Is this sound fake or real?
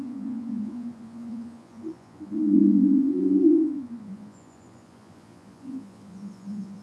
fake